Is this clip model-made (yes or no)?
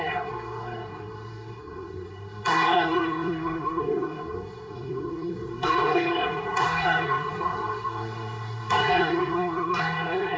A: yes